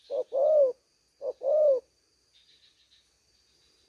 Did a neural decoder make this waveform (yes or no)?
no